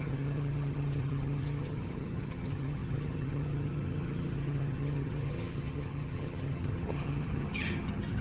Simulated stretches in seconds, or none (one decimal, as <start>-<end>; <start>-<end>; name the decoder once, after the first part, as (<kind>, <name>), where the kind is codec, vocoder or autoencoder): 0.0-8.2 (vocoder, HiFi-GAN)